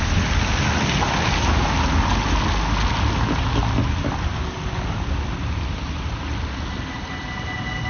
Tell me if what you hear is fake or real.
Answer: real